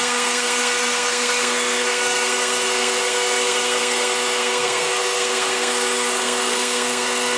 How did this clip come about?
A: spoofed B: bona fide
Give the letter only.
A